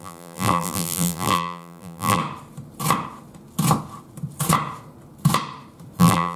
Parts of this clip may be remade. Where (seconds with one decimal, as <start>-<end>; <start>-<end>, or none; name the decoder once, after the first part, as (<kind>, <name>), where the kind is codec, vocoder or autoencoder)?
0.0-2.2 (vocoder, BigVGAN v2); 6.0-6.4